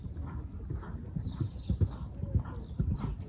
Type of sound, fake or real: real